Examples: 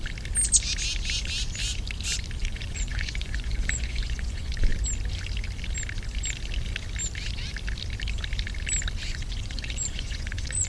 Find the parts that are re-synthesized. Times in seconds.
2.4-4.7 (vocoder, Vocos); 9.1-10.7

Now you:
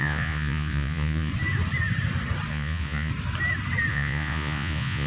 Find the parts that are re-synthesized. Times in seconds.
0.0-1.3 (vocoder, Vocos); 2.5-3.1; 3.9-5.1

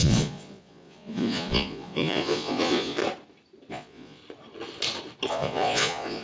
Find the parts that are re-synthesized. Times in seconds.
0.0-3.0 (vocoder, Vocos); 3.7-4.2; 5.3-6.2

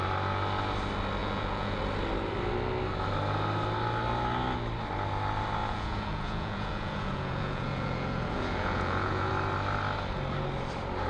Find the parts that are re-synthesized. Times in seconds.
1.2-1.8 (vocoder, Vocos); 5.6-9.3

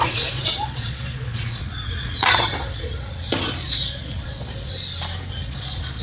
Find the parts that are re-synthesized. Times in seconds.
0.0-4.7 (vocoder, Vocos); 5.3-6.0

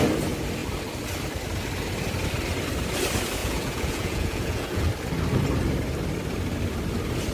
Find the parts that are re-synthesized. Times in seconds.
3.4-4.9 (vocoder, Vocos)

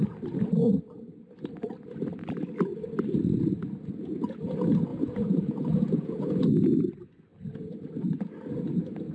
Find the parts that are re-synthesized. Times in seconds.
4.9-6.5 (vocoder, Vocos)

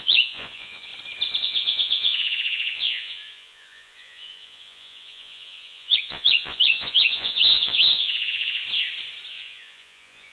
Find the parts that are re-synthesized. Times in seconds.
0.0-0.9 (vocoder, Vocos); 1.4-8.6; 9.3-10.3